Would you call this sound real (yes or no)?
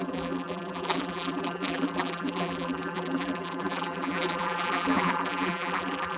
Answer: no